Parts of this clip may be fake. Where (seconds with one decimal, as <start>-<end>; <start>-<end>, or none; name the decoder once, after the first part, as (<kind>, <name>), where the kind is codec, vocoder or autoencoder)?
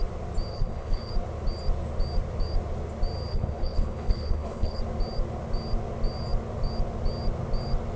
0.5-1.1 (codec, HILCodec); 3.3-4.8